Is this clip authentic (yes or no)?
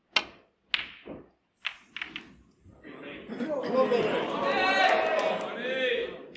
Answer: yes